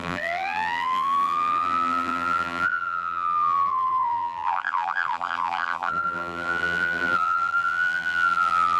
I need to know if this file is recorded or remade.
remade